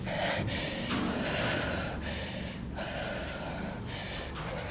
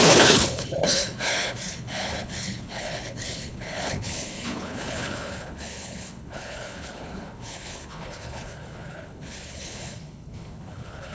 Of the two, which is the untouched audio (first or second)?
first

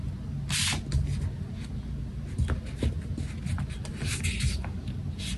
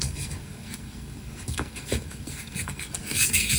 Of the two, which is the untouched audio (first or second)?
first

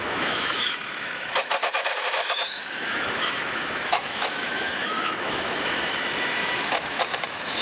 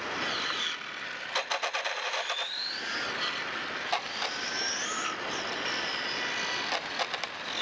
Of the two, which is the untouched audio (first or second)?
second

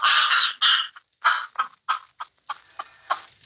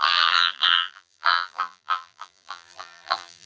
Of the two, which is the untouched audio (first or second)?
first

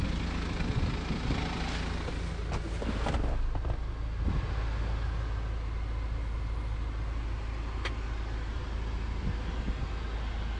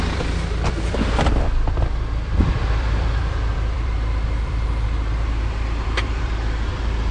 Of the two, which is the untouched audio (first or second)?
first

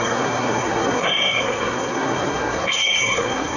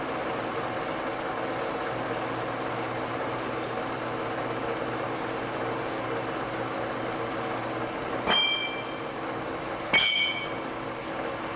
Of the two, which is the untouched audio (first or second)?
second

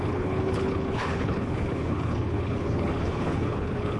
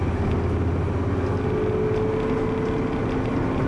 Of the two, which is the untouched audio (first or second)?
second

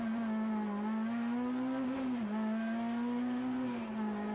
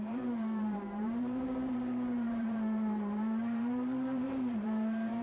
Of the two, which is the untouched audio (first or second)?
first